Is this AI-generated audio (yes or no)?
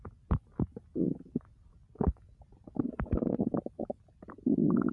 no